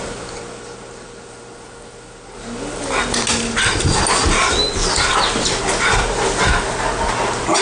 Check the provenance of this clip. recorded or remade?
recorded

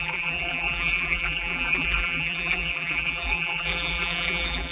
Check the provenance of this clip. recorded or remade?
remade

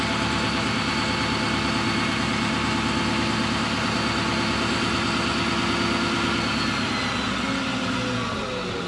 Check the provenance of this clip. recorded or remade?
recorded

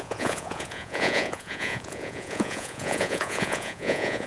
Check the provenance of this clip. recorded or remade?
remade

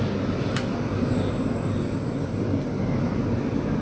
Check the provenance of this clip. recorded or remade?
recorded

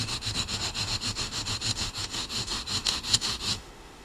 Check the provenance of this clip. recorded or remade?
remade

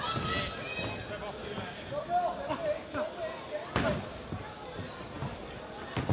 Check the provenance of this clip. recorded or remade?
recorded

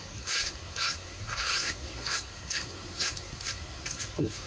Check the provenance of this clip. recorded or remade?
remade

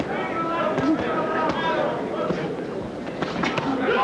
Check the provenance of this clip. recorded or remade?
recorded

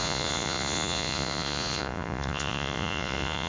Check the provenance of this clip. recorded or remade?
remade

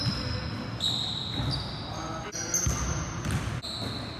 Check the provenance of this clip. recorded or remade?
recorded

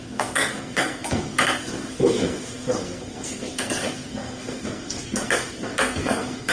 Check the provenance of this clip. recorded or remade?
remade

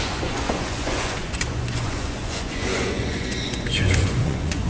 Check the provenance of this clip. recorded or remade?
remade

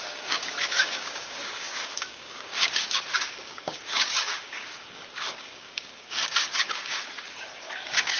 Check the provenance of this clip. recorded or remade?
remade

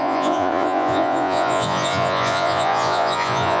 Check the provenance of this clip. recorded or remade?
remade